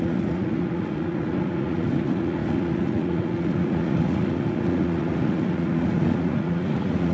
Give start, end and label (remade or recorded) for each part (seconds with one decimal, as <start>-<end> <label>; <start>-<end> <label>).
0.0-7.1 remade